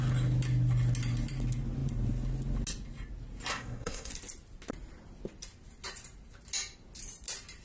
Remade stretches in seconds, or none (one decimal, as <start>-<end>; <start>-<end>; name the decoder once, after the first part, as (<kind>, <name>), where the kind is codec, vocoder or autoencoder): 3.5-4.1 (codec, SNAC)